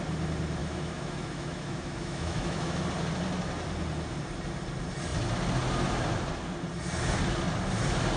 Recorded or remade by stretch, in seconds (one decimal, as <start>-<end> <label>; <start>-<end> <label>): 0.0-0.6 recorded; 0.6-2.8 remade; 2.8-8.2 recorded

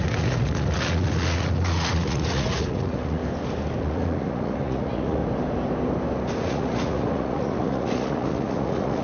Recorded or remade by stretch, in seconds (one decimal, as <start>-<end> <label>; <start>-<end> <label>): 0.0-3.2 remade; 3.2-3.8 recorded; 3.8-5.2 remade; 5.2-6.4 recorded; 6.4-9.0 remade